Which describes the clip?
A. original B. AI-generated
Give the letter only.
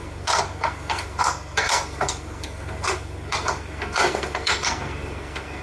B